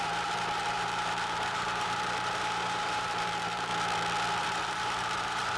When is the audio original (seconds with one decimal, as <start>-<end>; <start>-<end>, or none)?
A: 3.7-4.4

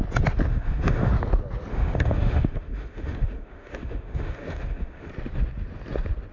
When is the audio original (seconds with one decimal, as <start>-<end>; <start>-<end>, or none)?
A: 0.0-0.5; 1.1-1.7; 5.1-6.3

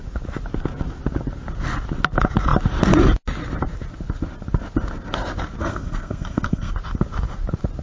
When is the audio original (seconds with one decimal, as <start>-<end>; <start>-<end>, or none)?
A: 0.0-5.6; 6.7-7.8

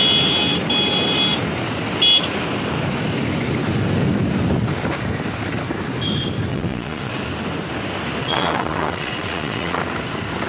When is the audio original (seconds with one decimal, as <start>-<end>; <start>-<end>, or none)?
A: 0.0-6.5; 7.2-8.2; 9.8-10.5